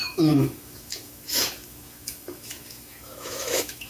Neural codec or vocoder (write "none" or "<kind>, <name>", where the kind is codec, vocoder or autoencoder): autoencoder, DAC-VAE